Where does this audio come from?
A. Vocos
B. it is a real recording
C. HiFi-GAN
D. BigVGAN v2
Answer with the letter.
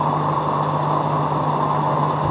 B